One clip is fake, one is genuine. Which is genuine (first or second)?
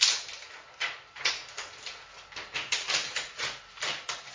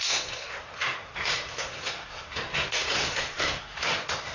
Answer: first